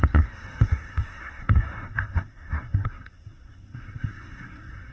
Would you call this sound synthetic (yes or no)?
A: yes